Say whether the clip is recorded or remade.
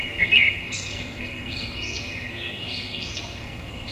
remade